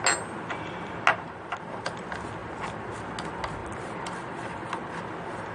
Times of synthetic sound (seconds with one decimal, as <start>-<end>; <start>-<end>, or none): 2.4-2.9; 3.6-4.9